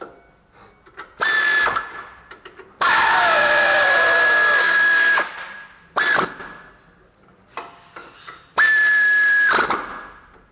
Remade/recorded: recorded